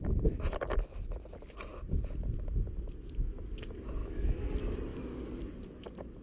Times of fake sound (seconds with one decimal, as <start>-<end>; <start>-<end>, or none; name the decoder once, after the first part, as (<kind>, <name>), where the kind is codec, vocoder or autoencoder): 4.0-4.5 (autoencoder, DAC-VAE)